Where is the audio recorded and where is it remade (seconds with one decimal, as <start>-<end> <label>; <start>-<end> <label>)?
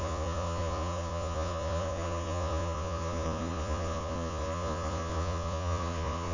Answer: 0.0-6.3 remade